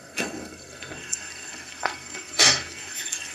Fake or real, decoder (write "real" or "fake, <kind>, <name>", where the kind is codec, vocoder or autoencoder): fake, codec, SNAC